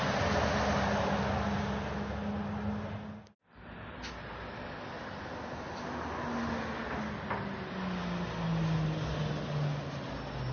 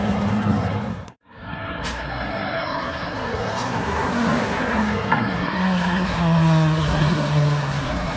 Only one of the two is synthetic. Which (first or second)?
second